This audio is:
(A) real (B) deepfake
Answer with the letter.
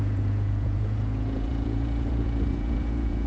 B